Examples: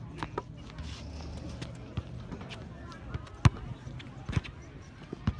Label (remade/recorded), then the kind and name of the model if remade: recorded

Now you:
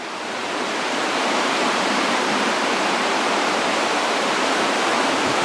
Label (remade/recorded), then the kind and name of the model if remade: remade, vocoder, BigVGAN v2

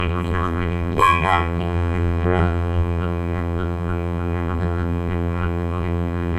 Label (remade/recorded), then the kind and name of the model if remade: remade, vocoder, BigVGAN v2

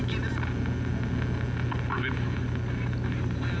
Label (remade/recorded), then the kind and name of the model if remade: recorded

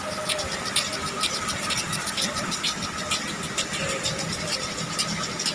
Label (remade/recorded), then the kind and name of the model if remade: recorded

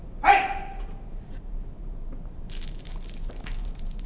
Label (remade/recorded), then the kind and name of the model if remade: remade, vocoder, BigVGAN v2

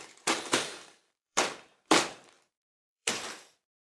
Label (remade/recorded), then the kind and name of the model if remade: remade, vocoder, BigVGAN v2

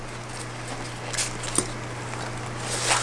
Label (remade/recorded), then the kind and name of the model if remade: recorded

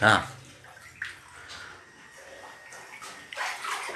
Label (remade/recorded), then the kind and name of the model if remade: recorded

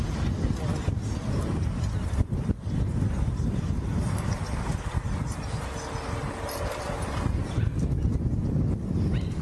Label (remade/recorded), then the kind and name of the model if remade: recorded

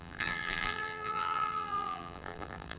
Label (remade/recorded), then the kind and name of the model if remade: remade, vocoder, BigVGAN v2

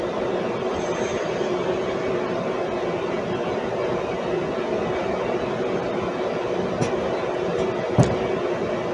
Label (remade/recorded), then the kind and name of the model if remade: recorded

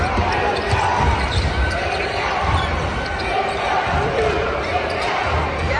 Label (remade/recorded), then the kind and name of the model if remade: remade, vocoder, BigVGAN v2